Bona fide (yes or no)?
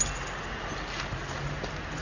yes